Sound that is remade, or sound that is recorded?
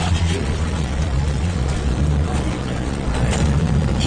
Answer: remade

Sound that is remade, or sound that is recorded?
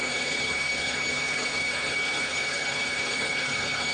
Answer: remade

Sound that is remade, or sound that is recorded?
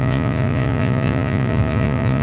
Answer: remade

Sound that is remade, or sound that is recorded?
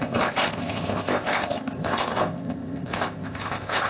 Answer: remade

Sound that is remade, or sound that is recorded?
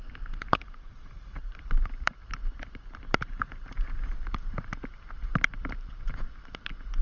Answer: remade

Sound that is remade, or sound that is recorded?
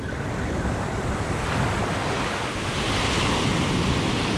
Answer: recorded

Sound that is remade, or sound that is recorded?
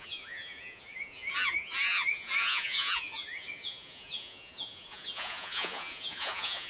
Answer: remade